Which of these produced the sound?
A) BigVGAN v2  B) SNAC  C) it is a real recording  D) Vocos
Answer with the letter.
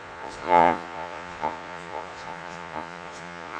D